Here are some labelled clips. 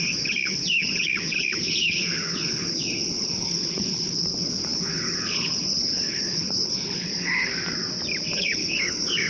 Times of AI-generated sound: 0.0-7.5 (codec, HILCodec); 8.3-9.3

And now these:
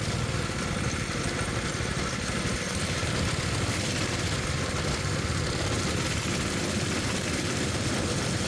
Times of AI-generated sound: 0.0-1.9 (vocoder, BigVGAN v2); 2.5-8.5

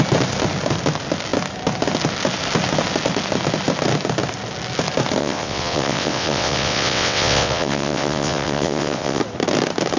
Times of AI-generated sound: 5.2-9.2 (vocoder, WaveNeXt)

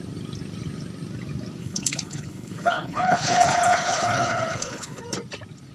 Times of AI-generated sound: 1.6-5.0 (codec, HILCodec)